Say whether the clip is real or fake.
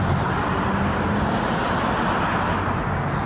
real